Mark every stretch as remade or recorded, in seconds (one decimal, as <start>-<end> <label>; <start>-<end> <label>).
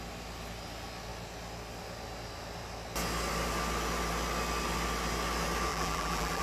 0.0-5.7 recorded; 5.7-6.4 remade